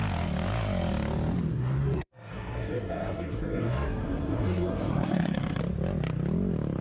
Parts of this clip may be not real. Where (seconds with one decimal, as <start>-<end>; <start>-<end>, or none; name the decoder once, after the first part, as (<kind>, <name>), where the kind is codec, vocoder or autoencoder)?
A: 1.5-5.6 (codec, SNAC)